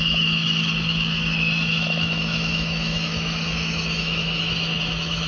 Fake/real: fake